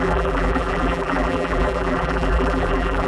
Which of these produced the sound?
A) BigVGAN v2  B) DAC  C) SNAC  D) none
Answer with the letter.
A